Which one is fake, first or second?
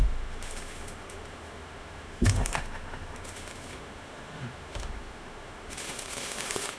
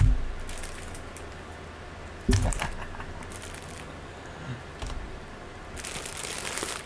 first